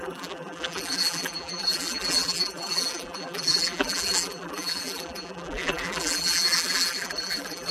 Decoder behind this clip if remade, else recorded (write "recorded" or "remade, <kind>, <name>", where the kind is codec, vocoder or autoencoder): remade, vocoder, BigVGAN v2